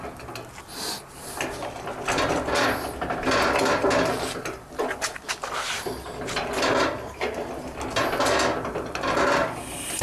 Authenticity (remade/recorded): recorded